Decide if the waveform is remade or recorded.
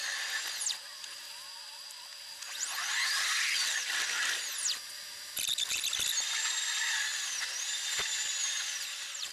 recorded